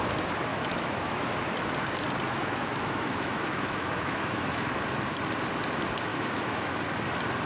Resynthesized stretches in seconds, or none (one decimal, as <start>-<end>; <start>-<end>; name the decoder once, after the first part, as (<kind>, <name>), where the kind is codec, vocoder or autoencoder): 0.5-1.2 (autoencoder, DAC-VAE); 2.4-4.8; 6.1-6.7